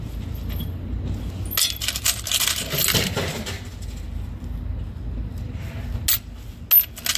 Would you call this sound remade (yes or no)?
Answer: no